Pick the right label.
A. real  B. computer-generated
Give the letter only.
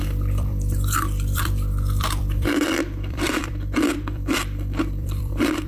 B